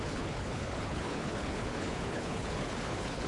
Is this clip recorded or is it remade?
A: remade